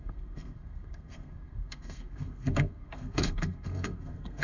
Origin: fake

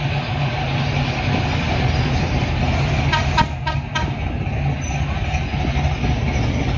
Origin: real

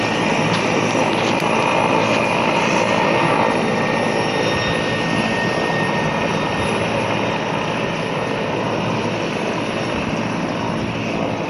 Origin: real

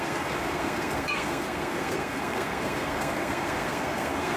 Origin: fake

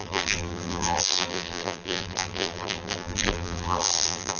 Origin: fake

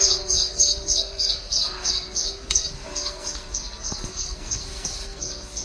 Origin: fake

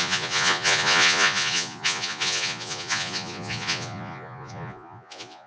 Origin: fake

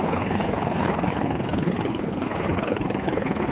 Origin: fake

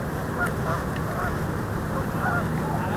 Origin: real